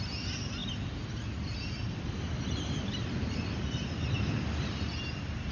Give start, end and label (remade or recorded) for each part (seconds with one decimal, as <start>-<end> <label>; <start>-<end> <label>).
0.0-5.5 recorded